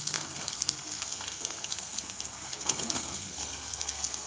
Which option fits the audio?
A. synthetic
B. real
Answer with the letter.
A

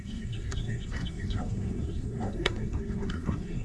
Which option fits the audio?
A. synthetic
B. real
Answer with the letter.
A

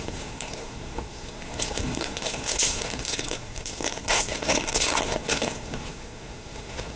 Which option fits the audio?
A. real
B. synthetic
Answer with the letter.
B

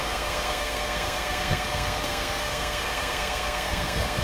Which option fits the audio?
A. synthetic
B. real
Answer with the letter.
A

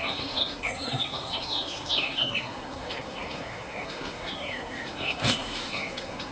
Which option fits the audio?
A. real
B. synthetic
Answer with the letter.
B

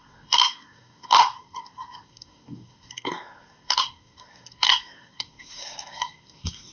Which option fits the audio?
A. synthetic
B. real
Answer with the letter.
A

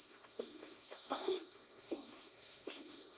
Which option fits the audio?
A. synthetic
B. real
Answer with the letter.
A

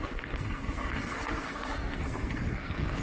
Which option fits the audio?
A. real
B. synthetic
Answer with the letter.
B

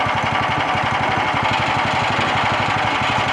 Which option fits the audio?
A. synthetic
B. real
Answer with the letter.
B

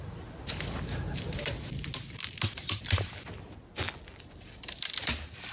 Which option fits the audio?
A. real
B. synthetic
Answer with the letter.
A